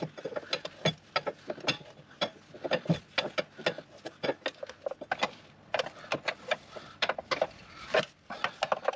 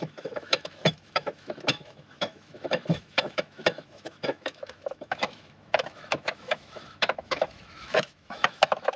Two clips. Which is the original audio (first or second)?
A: first